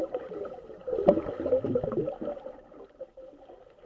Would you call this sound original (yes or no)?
yes